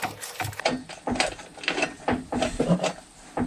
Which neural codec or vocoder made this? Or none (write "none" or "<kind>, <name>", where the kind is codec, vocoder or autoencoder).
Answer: none